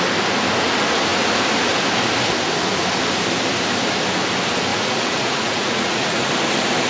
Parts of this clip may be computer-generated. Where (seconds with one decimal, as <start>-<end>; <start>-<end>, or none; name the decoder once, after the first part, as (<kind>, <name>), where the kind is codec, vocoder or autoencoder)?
4.7-6.3 (vocoder, Vocos)